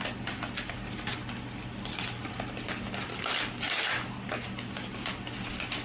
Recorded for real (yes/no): yes